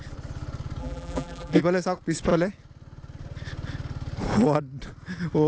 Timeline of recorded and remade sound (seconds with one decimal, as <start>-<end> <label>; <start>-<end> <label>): 0.0-0.8 recorded; 0.8-1.6 remade; 1.6-5.5 recorded